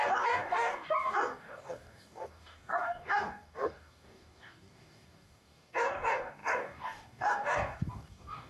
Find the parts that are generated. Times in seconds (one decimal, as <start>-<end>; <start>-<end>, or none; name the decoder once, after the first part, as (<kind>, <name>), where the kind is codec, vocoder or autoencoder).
0.0-8.5 (codec, DAC)